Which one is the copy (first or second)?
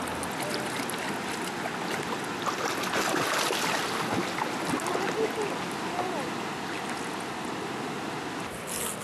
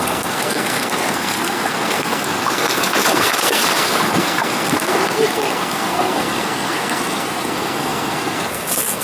second